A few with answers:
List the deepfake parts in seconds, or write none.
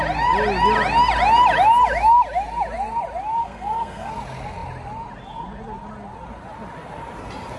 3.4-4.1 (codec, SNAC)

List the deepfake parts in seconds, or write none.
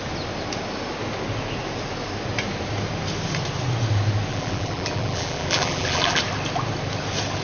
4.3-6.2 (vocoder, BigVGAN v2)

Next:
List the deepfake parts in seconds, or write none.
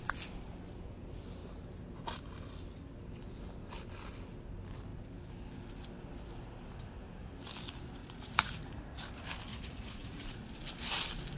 8.0-9.0 (vocoder, Vocos); 9.5-10.5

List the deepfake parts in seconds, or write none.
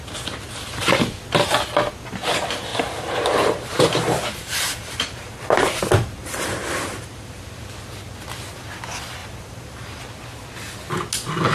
2.7-5.8 (vocoder, BigVGAN v2); 6.2-7.4; 9.2-10.0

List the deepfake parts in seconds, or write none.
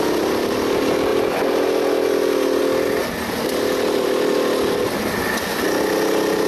none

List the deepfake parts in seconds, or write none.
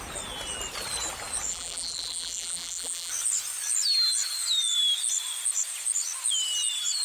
1.5-3.1 (vocoder, BigVGAN v2)